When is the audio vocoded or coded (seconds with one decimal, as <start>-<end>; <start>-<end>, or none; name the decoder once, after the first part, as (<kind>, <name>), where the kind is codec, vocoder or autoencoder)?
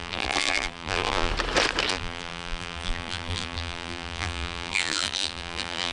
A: 0.0-1.3 (vocoder, BigVGAN v2); 1.9-5.9